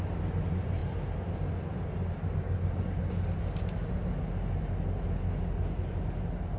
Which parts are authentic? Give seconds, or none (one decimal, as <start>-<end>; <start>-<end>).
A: 0.0-6.6